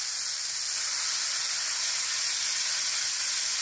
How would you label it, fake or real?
real